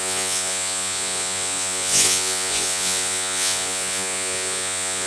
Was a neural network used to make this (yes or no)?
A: yes